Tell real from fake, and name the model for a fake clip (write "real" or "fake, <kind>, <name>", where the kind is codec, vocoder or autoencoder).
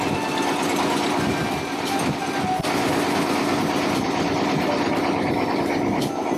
real